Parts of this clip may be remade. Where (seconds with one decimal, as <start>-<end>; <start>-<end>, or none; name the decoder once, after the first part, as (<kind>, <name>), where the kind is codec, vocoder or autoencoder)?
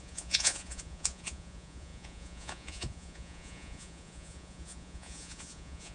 0.0-5.9 (vocoder, Vocos)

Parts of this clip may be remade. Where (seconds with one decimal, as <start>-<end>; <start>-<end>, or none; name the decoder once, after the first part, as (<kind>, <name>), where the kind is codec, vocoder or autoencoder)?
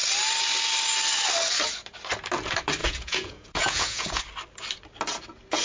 2.8-4.2 (vocoder, Vocos)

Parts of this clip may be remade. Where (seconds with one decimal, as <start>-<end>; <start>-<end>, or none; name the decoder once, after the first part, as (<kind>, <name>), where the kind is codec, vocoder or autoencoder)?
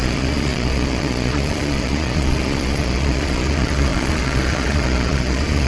0.0-5.7 (vocoder, Vocos)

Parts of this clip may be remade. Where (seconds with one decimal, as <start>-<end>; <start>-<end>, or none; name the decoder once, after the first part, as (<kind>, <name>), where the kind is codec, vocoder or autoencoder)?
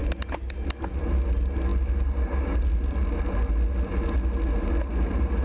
none